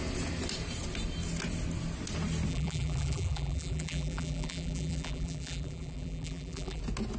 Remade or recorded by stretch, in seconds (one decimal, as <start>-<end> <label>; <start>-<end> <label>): 0.0-2.5 recorded; 2.5-6.8 remade; 6.8-7.2 recorded